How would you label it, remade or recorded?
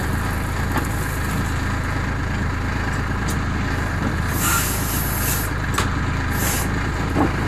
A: recorded